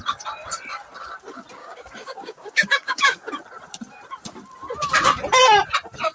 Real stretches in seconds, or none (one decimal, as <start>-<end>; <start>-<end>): 0.0-1.6; 3.4-6.1